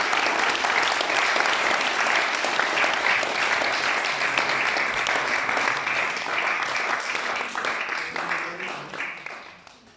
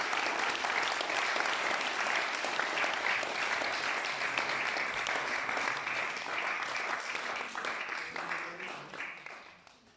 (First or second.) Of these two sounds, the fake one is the second